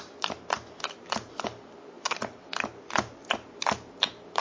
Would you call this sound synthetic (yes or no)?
no